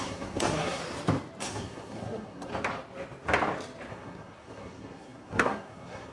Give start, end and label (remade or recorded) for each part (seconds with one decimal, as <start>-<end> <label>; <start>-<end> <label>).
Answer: 0.0-0.8 remade; 0.8-1.4 recorded; 1.4-2.5 remade; 2.5-3.9 recorded; 3.9-6.1 remade